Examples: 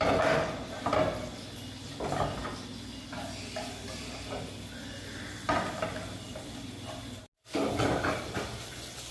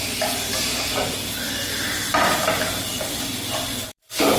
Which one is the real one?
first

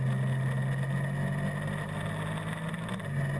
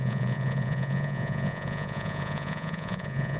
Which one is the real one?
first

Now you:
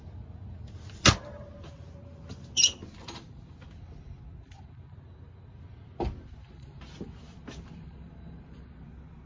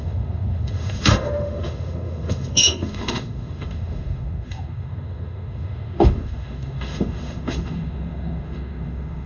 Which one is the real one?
first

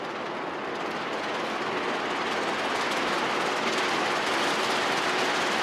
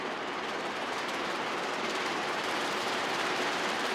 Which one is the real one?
first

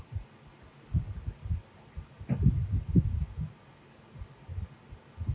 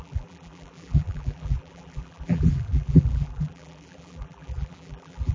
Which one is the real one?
first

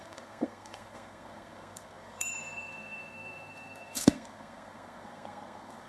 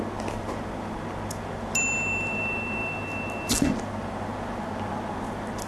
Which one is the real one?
second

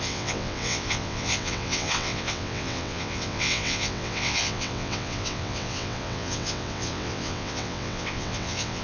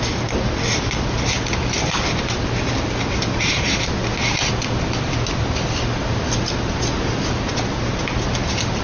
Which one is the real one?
second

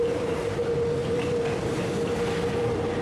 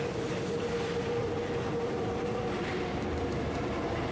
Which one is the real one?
first